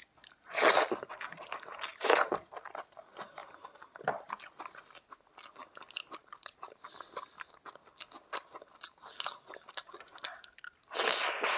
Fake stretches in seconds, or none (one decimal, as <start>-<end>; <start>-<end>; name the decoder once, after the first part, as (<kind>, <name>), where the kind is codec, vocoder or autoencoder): 1.9-2.5 (vocoder, BigVGAN v2); 3.4-4.4; 6.2-6.9